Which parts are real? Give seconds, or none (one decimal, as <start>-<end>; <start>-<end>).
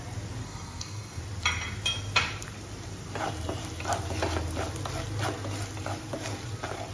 0.0-0.4; 1.2-6.9